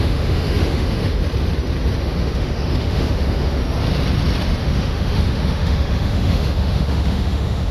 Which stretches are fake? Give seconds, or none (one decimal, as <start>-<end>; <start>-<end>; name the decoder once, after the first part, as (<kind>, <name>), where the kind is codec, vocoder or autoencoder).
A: 0.0-1.2 (autoencoder, DAC-VAE); 2.0-3.6; 4.6-7.7